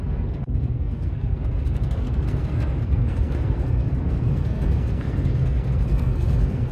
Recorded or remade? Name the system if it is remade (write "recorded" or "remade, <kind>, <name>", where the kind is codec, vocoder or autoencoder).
remade, codec, SNAC